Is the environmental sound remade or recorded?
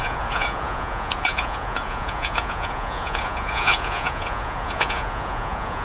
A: remade